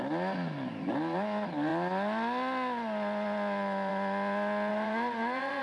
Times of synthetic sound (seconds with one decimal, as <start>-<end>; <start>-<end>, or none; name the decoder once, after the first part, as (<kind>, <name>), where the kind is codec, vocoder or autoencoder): 4.7-5.6 (vocoder, Vocos)